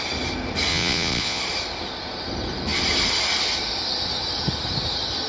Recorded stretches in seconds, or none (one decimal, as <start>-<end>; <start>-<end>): 0.0-0.7; 1.4-5.3